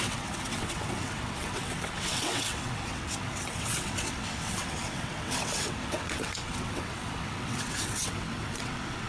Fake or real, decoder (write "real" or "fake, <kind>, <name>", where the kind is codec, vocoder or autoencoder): fake, vocoder, WaveNeXt